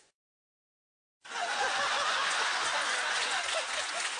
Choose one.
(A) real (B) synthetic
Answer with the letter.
B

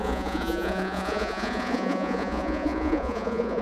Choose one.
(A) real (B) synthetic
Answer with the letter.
B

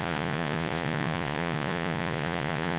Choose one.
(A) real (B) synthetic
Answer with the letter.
B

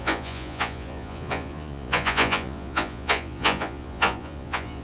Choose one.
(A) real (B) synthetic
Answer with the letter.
B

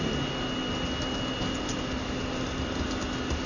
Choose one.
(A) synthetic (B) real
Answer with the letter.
B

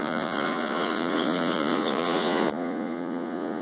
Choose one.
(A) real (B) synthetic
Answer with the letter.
B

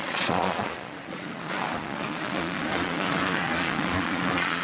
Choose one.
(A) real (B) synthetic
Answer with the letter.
B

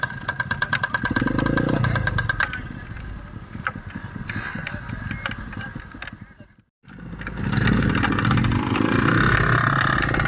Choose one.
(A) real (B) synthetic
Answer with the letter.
A